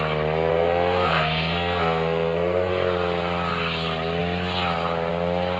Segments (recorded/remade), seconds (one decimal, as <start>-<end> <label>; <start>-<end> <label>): 0.0-0.5 recorded; 0.5-2.7 remade; 2.7-5.6 recorded